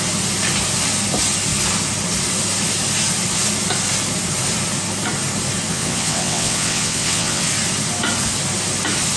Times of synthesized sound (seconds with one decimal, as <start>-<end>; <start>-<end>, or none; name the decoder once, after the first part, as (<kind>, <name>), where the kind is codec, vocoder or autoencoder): 5.7-7.5 (vocoder, WaveNeXt)